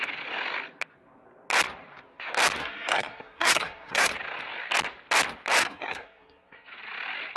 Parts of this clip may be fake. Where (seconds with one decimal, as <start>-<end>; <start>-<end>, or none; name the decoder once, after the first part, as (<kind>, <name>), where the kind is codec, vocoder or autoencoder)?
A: 2.6-4.1 (codec, SNAC); 5.6-6.7

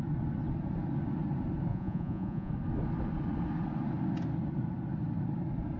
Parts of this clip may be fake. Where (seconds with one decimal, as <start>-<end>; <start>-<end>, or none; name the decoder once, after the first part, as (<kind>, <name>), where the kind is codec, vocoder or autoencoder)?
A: 1.7-2.5 (vocoder, Vocos)

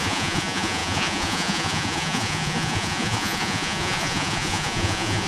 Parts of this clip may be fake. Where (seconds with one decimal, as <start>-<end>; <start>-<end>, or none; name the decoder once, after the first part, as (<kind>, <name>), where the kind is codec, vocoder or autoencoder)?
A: 0.0-5.3 (vocoder, Vocos)

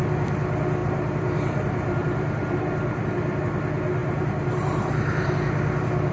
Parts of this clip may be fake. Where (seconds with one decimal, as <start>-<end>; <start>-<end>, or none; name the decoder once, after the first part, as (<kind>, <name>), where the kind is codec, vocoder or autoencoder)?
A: 0.8-3.4 (vocoder, BigVGAN v2); 4.0-5.3

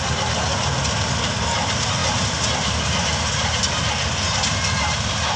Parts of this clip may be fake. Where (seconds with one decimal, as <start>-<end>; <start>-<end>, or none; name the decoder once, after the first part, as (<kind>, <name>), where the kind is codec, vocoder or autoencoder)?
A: none

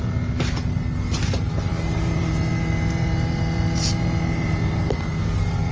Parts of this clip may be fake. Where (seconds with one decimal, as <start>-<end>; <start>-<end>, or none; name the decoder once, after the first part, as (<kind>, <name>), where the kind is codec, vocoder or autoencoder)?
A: 1.7-5.1 (vocoder, BigVGAN v2)

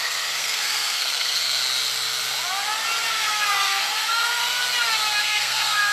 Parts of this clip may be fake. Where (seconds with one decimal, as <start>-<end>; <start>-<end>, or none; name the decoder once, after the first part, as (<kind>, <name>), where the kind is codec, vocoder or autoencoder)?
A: 0.0-1.6 (codec, SNAC); 3.1-4.6; 5.2-5.9